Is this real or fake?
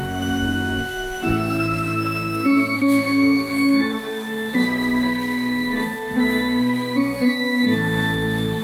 fake